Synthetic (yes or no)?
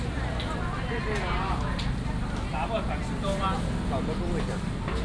no